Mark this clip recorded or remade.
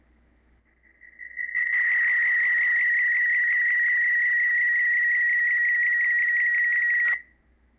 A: recorded